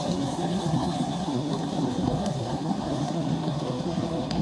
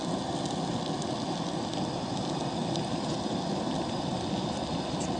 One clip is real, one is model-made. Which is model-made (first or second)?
first